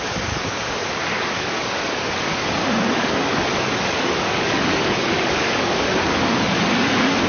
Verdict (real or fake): fake